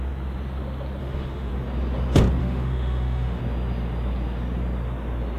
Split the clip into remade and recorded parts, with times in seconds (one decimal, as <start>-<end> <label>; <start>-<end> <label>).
0.0-1.0 recorded; 1.0-1.5 remade; 1.5-2.4 recorded; 2.4-3.4 remade; 3.4-5.4 recorded